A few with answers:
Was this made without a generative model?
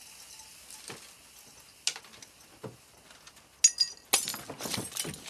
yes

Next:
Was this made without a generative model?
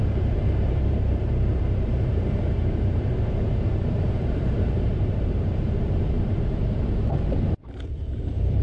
no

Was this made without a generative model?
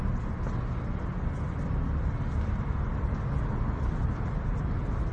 yes